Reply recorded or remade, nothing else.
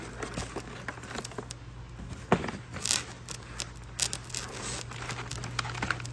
recorded